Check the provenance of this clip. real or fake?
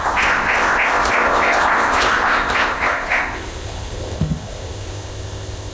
fake